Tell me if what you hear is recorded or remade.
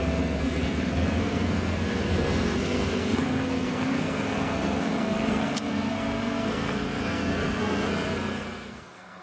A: remade